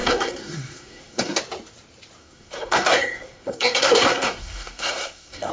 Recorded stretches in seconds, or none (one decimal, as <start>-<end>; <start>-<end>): 1.4-2.2